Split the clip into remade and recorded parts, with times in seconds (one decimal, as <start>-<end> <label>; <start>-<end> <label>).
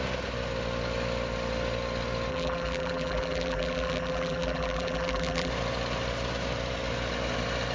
0.0-2.3 recorded; 2.3-5.5 remade; 5.5-7.7 recorded